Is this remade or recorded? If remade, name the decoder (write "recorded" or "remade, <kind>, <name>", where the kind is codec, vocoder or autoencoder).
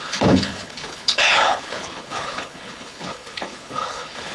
remade, codec, HILCodec